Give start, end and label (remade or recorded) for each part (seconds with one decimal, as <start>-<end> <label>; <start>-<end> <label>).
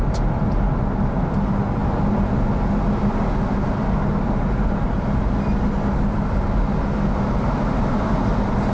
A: 0.0-8.7 recorded